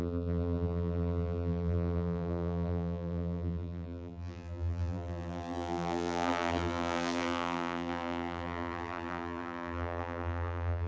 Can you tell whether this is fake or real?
fake